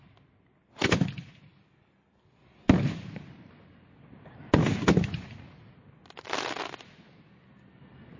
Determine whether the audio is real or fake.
real